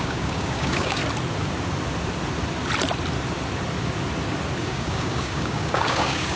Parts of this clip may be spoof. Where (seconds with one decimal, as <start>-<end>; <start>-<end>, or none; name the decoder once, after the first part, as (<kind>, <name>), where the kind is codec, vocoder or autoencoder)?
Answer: 0.0-1.0 (codec, DAC); 4.6-6.4